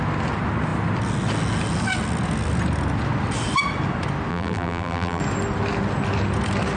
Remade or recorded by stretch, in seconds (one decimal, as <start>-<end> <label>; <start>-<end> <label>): 0.0-4.3 recorded; 4.3-5.2 remade; 5.2-6.8 recorded